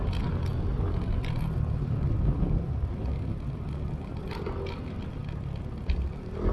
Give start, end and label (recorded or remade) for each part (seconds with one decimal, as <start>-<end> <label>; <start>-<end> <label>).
0.0-6.5 recorded